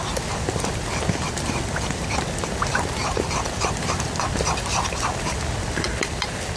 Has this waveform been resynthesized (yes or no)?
no